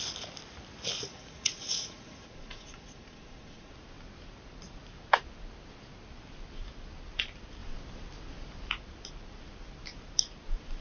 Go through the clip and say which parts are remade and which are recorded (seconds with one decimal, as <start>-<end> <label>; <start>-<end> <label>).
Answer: 0.0-1.1 recorded; 1.1-3.7 remade; 3.7-10.8 recorded